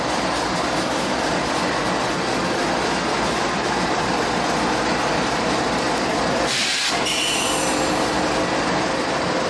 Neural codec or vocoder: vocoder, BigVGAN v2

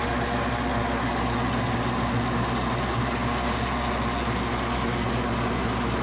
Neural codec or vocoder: none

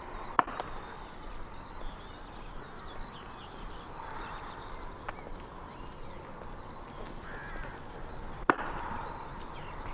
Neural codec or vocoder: none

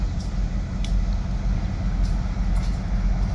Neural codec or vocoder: none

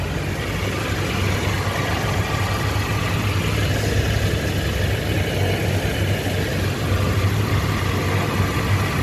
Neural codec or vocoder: none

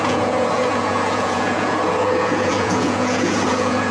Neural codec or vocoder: vocoder, Vocos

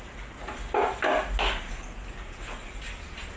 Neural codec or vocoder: none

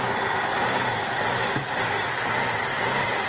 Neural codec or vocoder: none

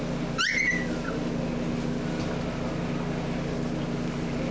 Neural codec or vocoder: none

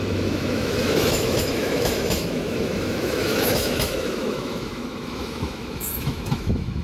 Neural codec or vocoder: autoencoder, DAC-VAE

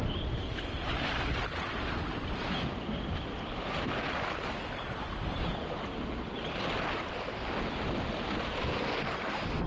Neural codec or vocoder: none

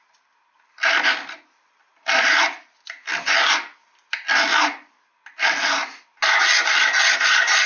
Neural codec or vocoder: none